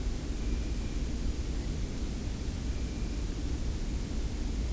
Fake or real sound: real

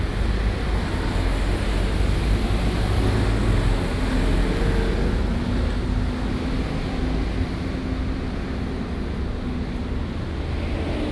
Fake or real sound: real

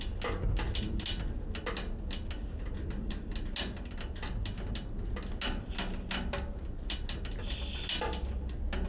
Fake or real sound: real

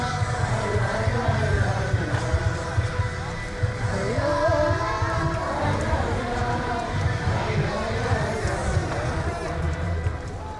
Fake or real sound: real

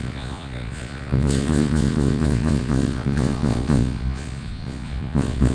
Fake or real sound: fake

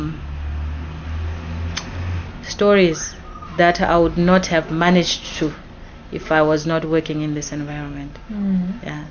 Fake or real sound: real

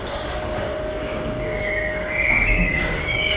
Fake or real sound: fake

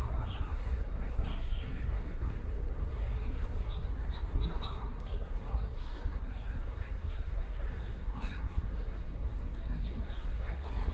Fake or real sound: fake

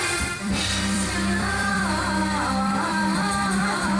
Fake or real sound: fake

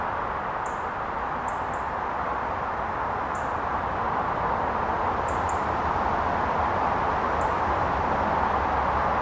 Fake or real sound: real